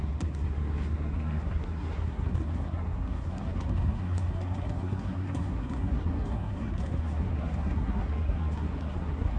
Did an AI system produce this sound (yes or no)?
yes